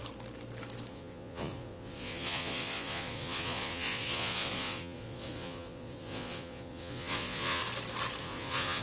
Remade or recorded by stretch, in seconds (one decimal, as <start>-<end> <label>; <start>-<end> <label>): 0.0-0.9 recorded; 0.9-7.6 remade; 7.6-8.2 recorded; 8.2-8.8 remade